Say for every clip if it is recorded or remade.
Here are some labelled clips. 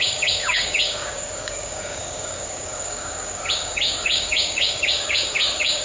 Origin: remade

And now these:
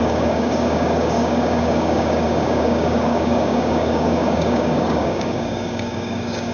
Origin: remade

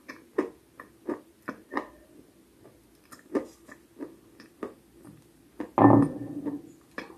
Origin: recorded